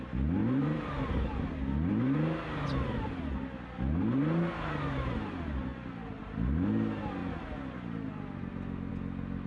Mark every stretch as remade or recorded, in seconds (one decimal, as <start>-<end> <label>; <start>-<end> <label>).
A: 0.0-0.4 recorded; 0.4-3.2 remade; 3.2-9.5 recorded